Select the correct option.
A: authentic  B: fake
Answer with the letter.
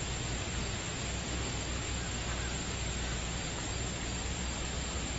A